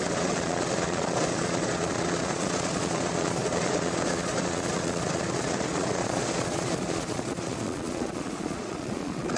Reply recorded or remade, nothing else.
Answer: remade